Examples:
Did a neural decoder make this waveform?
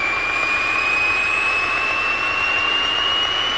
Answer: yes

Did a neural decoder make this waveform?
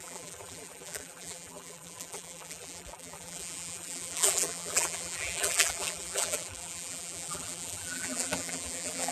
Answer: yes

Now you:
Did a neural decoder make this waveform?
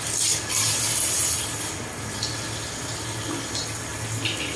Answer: no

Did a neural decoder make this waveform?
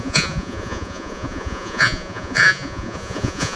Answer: yes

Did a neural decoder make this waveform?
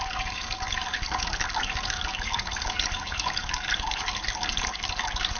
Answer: yes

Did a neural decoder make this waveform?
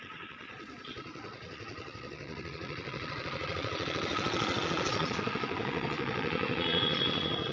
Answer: yes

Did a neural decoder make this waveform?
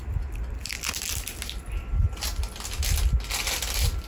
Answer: no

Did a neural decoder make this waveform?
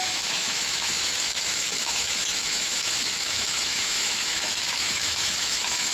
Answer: yes